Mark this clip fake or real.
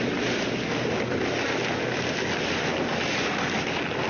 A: real